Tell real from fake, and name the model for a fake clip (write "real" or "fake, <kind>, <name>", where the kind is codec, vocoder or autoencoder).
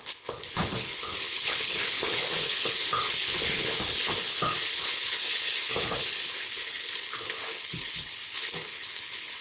fake, codec, HILCodec